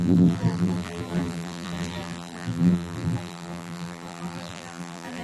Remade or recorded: remade